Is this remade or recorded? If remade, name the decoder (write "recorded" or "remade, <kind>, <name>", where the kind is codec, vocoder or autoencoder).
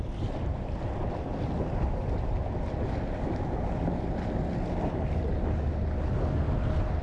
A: recorded